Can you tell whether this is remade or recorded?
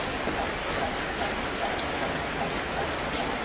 recorded